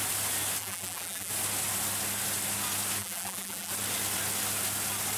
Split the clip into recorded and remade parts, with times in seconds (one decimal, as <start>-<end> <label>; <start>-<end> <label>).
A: 0.0-0.6 recorded; 0.6-1.3 remade; 1.3-3.0 recorded; 3.0-3.7 remade; 3.7-5.2 recorded